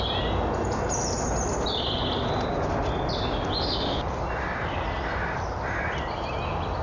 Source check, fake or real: real